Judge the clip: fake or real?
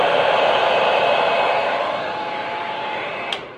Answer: fake